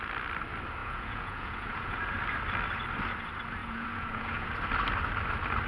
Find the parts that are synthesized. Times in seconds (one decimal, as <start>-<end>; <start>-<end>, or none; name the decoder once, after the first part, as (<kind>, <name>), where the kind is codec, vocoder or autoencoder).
0.8-2.0 (vocoder, Vocos); 3.6-4.5